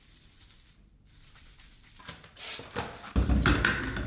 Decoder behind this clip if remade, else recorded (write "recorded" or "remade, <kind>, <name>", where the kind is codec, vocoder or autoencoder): recorded